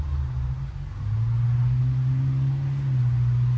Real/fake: real